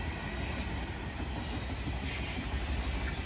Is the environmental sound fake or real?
real